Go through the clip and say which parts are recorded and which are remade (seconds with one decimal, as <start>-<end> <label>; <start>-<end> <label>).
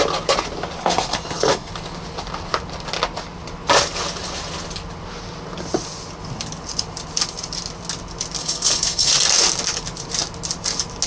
0.0-0.8 recorded; 0.8-1.7 remade; 1.7-8.4 recorded; 8.4-9.1 remade; 9.1-11.1 recorded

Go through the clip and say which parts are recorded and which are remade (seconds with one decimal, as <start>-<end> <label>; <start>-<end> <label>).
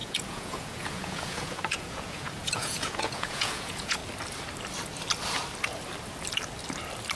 0.0-4.0 remade; 4.0-7.2 recorded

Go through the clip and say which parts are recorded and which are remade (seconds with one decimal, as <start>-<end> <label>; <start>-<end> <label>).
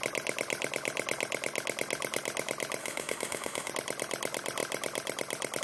0.0-2.8 recorded; 2.8-3.7 remade; 3.7-5.6 recorded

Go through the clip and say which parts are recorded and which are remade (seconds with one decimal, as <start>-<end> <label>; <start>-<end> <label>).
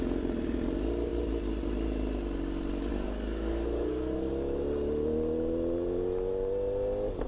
0.0-2.9 recorded; 2.9-4.3 remade; 4.3-7.3 recorded